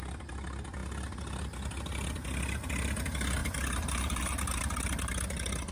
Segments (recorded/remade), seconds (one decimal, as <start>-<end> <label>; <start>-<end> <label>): 0.0-3.4 recorded; 3.4-4.6 remade; 4.6-5.7 recorded